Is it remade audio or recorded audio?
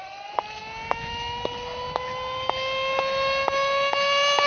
recorded